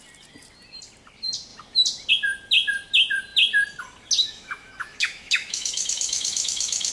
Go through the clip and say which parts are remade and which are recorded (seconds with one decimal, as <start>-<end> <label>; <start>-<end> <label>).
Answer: 0.0-4.2 recorded; 4.2-6.9 remade